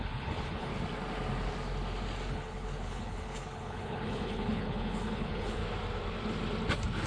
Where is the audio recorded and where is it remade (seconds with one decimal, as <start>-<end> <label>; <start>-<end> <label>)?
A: 0.0-0.7 remade; 0.7-2.3 recorded; 2.3-5.6 remade; 5.6-7.1 recorded